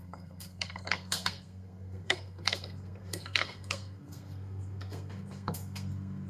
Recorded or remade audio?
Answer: remade